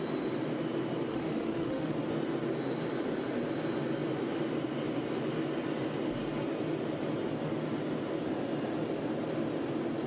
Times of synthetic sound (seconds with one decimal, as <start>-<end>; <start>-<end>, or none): 1.1-1.9